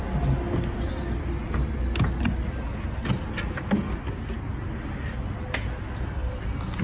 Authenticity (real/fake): real